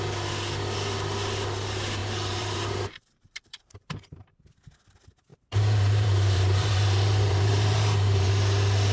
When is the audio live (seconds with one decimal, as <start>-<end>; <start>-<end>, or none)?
0.0-2.0; 4.4-5.3; 8.3-8.9